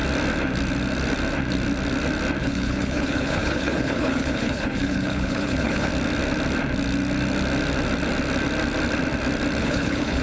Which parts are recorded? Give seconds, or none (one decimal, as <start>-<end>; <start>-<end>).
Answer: 0.0-2.4; 5.9-9.6